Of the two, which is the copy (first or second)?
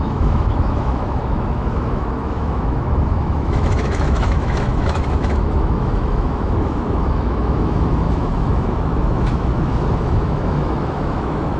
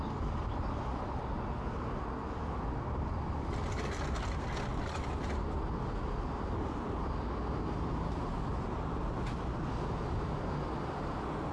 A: first